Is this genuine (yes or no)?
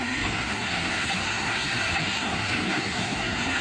no